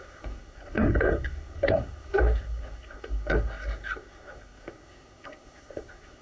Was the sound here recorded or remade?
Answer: remade